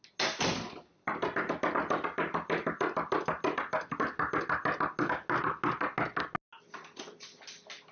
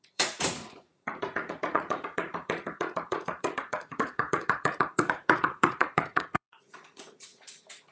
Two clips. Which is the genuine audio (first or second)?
first